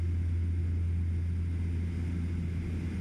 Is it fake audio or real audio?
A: real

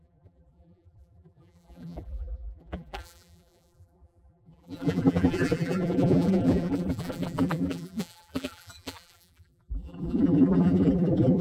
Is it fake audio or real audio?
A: fake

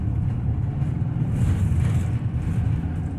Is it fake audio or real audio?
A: fake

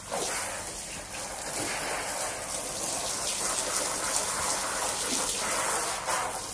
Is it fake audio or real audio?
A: real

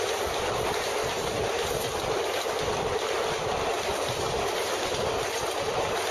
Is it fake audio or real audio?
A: fake